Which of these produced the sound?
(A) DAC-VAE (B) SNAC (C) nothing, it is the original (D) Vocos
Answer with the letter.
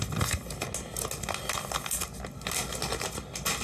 C